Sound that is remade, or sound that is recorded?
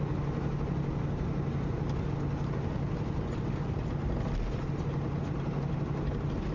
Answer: recorded